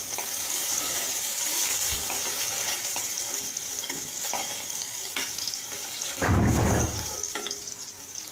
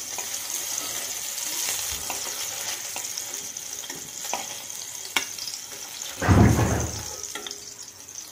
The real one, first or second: second